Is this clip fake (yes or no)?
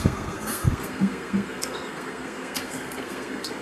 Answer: yes